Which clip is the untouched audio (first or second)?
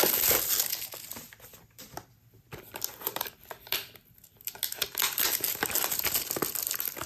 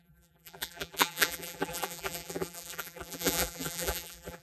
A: first